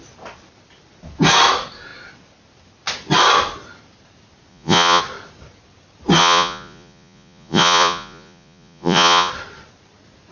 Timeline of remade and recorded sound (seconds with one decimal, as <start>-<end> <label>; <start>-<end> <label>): 0.0-4.5 recorded; 4.5-5.0 remade; 5.0-6.2 recorded; 6.2-9.3 remade; 9.3-10.3 recorded